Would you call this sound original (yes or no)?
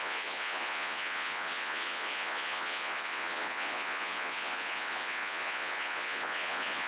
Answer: no